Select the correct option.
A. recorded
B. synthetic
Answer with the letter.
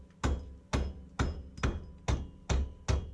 A